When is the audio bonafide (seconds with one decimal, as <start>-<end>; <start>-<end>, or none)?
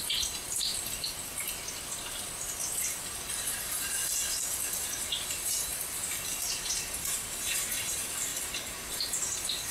0.7-3.3; 4.0-5.2; 5.7-6.6; 8.3-8.9